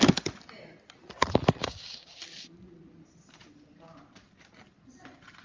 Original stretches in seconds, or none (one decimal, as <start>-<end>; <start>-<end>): 0.0-1.6; 2.2-5.4